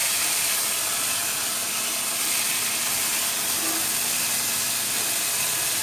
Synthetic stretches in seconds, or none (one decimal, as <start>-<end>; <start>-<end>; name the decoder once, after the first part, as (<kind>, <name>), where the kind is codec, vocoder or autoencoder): none